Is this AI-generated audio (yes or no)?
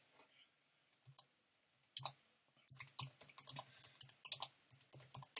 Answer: no